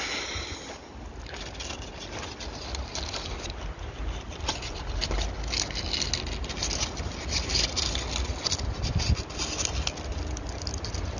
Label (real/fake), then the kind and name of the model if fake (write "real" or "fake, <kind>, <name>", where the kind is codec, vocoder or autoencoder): real